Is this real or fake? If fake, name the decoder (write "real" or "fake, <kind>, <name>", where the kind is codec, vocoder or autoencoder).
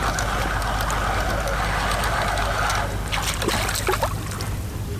real